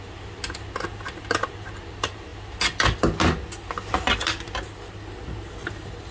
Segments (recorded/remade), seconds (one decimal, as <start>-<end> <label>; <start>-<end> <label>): 0.0-6.1 recorded